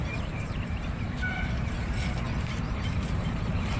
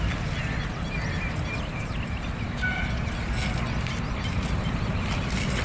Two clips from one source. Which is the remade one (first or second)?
first